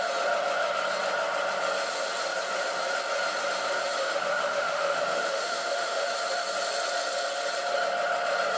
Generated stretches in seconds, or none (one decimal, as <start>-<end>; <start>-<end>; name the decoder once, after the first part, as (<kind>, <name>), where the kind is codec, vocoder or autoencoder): 4.0-6.1 (autoencoder, DAC-VAE)